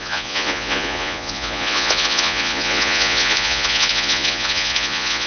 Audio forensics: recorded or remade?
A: remade